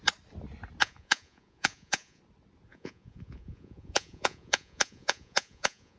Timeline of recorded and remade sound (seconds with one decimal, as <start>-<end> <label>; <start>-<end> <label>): 0.0-0.8 recorded; 0.8-2.2 remade; 2.2-2.7 recorded; 2.7-6.0 remade